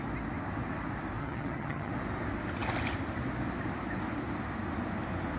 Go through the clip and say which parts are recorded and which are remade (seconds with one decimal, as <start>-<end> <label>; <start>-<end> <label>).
0.0-1.2 recorded; 1.2-1.9 remade; 1.9-5.4 recorded